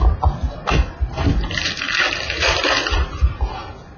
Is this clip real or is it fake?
real